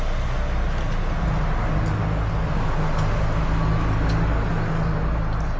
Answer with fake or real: real